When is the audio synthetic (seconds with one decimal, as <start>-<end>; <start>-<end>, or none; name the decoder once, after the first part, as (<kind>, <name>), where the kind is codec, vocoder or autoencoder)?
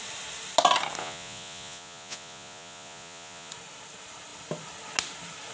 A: 1.0-3.5 (vocoder, Vocos)